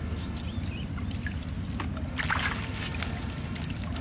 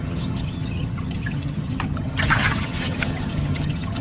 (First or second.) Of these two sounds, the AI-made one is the second